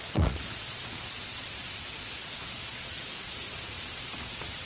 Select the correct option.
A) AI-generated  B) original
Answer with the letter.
A